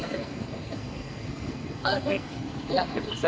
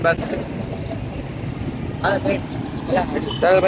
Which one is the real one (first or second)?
second